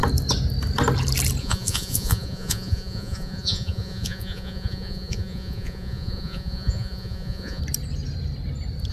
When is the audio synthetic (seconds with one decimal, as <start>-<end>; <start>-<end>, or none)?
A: 1.4-7.6